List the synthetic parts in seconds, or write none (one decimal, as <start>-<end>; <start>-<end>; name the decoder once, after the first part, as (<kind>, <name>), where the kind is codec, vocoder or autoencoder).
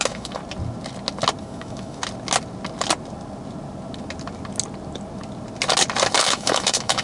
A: 0.0-0.4 (autoencoder, DAC-VAE); 1.4-2.0; 6.2-7.0